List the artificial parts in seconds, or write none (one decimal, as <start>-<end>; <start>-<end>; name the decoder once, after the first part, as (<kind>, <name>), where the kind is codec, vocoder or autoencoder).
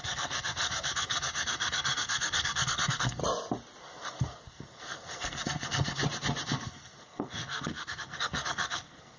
0.0-3.2 (codec, SNAC); 3.8-6.0; 6.5-9.2